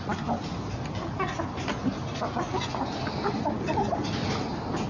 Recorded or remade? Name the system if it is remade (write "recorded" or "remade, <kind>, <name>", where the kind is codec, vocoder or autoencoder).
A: recorded